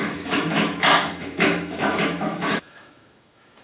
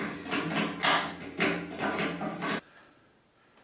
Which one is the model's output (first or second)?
first